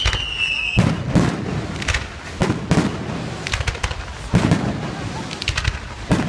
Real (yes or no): yes